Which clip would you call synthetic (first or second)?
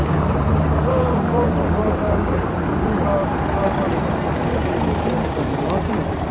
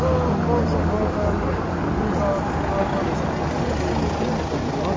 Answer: first